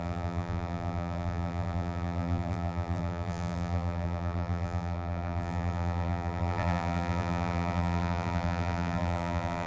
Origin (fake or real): fake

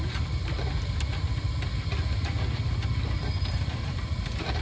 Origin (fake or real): real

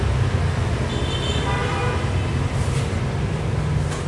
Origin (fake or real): real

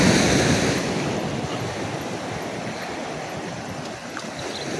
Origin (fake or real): real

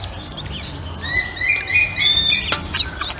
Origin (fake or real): real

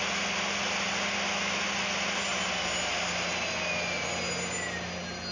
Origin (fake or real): real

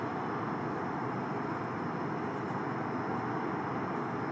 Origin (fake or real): real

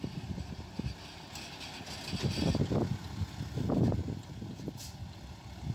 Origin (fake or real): real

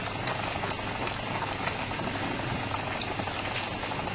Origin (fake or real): real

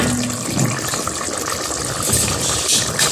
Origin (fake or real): real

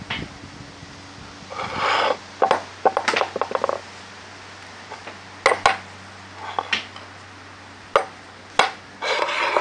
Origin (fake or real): real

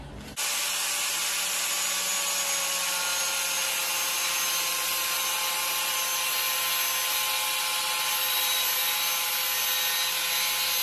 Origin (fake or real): real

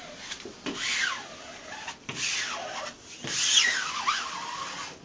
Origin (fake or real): real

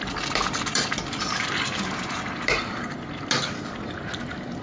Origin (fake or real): real